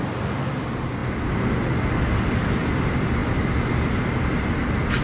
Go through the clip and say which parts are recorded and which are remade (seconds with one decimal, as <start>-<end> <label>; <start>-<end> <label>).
0.0-5.0 recorded

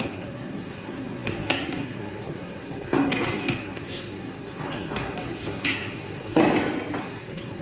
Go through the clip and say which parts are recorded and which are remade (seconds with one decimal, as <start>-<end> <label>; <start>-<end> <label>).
0.0-6.4 remade; 6.4-7.0 recorded; 7.0-7.6 remade

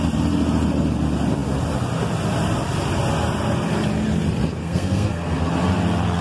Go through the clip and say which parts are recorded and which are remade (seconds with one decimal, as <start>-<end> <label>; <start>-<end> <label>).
0.0-4.6 recorded; 4.6-5.4 remade; 5.4-6.2 recorded

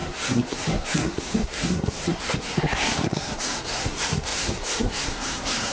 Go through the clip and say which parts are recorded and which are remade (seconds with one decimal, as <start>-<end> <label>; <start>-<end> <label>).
0.0-5.7 remade

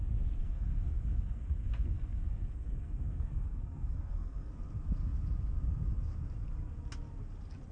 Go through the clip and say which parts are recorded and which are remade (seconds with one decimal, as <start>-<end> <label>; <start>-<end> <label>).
0.0-0.4 recorded; 0.4-4.5 remade; 4.5-7.7 recorded

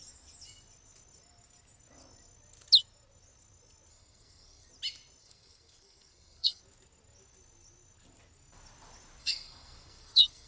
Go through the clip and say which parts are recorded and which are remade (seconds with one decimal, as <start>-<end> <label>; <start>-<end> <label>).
0.0-3.9 recorded; 3.9-4.7 remade; 4.7-5.2 recorded; 5.2-6.6 remade; 6.6-9.2 recorded; 9.2-10.5 remade

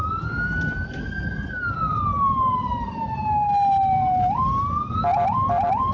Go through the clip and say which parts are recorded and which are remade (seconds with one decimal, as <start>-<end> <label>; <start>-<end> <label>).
0.0-5.9 recorded